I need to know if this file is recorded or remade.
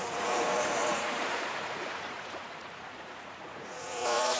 remade